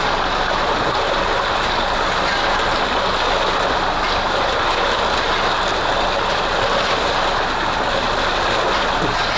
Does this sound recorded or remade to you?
recorded